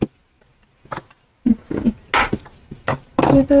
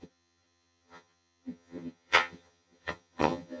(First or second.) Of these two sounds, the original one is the first